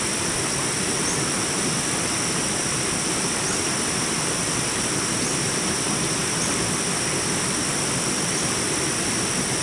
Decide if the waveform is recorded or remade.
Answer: remade